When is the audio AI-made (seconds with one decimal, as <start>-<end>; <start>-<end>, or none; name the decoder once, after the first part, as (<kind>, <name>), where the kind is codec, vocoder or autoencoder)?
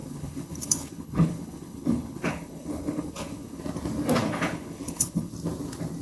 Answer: 0.0-3.6 (codec, HILCodec); 4.2-5.3